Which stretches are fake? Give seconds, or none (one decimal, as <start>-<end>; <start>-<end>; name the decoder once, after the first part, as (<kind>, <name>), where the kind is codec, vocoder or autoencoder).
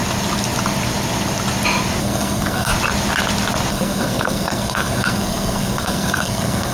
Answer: 2.0-2.7 (codec, SNAC); 3.7-6.7